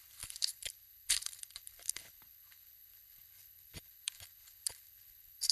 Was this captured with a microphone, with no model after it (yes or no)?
no